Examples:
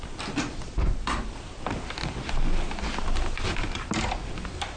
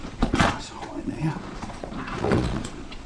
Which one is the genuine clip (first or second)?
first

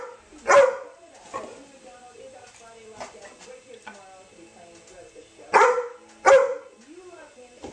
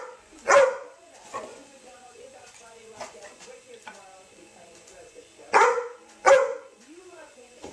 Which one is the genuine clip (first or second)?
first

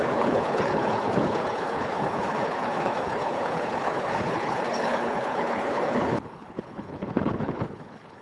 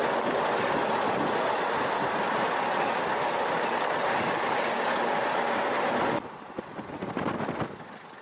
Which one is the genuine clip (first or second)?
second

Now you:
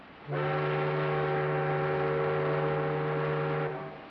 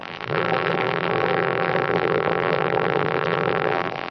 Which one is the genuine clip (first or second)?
first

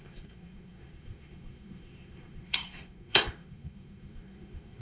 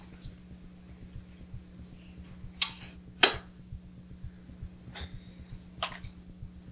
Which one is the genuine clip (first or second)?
second